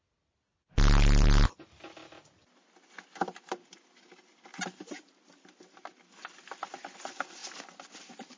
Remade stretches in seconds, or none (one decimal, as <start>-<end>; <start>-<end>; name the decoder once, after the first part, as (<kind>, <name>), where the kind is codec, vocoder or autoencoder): none